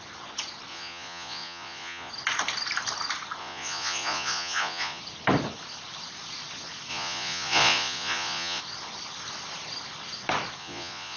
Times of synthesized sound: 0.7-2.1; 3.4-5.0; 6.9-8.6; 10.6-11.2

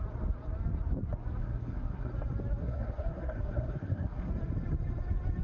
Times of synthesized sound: 1.4-2.1; 2.6-4.3

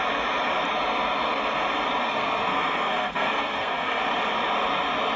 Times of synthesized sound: 2.0-4.0

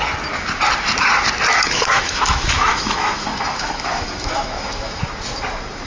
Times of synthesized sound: 1.5-5.0

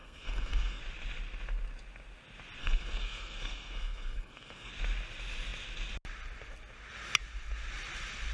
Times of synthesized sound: 0.0-0.8; 2.6-4.7

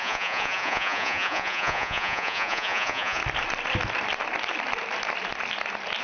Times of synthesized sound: 0.0-3.2